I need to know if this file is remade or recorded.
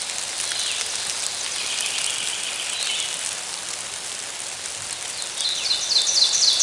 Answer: recorded